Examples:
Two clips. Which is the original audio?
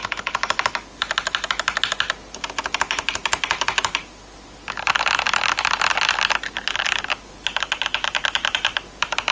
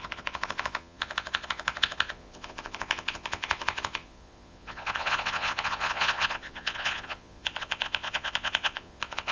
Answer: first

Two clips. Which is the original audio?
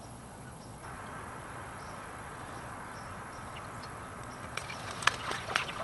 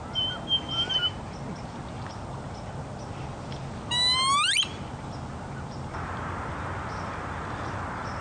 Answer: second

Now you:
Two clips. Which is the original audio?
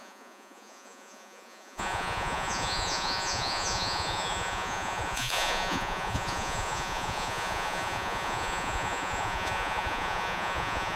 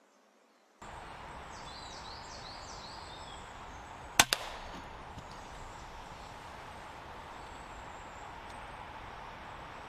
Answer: second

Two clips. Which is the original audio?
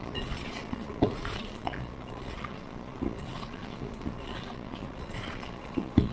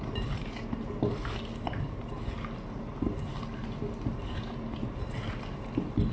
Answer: second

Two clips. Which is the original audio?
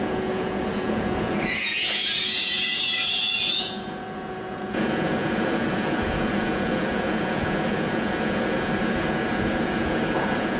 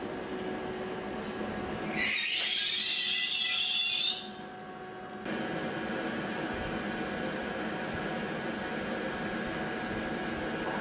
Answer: second